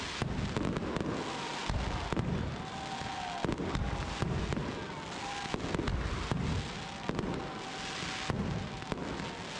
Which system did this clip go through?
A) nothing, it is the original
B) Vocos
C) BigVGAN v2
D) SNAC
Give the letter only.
A